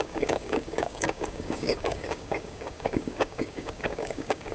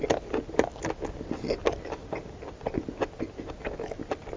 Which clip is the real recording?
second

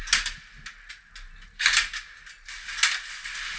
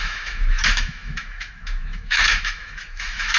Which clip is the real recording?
first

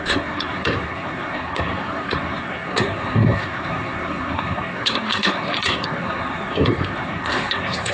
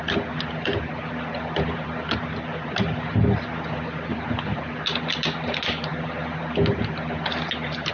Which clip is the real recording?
second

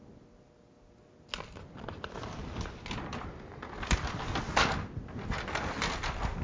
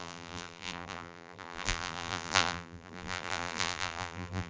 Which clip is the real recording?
first